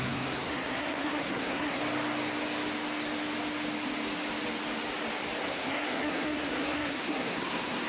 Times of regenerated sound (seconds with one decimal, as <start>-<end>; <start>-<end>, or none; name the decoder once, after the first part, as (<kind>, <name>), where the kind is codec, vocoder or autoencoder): 0.0-1.8 (codec, SNAC); 5.4-7.9

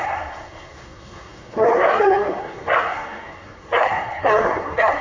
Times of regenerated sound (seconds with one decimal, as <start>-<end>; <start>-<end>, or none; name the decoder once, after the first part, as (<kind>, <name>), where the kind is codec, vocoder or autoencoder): 0.0-5.0 (codec, SNAC)

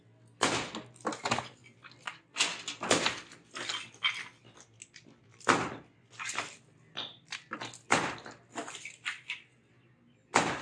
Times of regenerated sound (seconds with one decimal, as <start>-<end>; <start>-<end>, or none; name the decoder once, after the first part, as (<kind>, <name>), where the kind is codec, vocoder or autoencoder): none